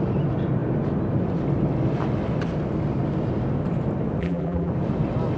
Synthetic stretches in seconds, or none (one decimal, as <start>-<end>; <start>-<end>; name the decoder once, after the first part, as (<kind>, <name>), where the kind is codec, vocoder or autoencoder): 4.2-4.7 (vocoder, BigVGAN v2)